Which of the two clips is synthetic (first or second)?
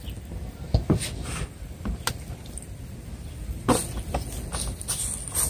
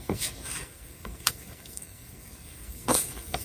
second